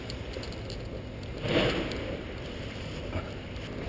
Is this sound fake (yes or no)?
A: no